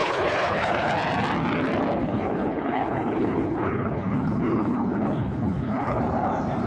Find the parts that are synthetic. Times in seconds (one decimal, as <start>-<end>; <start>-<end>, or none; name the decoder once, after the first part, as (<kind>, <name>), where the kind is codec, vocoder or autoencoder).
0.0-0.9 (codec, HILCodec); 2.0-6.0